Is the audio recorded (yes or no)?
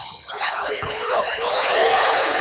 no